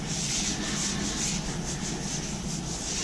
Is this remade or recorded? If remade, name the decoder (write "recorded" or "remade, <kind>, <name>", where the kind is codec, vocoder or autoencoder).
recorded